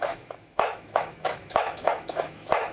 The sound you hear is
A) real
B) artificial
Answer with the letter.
B